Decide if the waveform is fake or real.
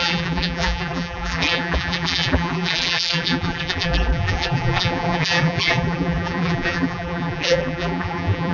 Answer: fake